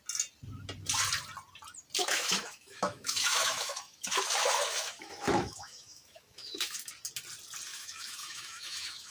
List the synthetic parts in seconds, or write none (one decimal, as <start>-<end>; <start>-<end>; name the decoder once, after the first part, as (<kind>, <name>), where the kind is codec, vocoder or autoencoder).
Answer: 2.0-6.9 (autoencoder, DAC-VAE); 7.7-9.1